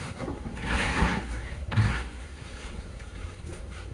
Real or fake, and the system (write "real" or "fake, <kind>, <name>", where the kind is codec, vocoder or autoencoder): fake, codec, SNAC